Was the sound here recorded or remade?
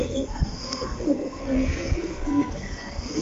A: remade